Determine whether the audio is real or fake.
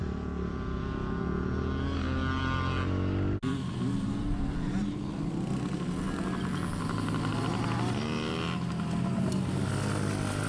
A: real